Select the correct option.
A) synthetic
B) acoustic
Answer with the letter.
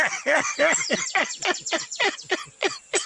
A